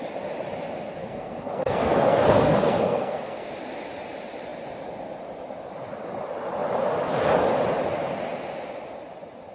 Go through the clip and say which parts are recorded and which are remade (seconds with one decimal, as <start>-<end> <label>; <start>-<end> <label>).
0.0-1.0 recorded; 1.0-3.5 remade; 3.5-9.5 recorded